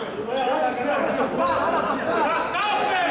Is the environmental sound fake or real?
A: real